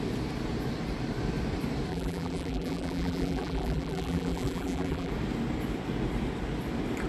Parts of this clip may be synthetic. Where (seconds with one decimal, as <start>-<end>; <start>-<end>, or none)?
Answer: 1.9-5.1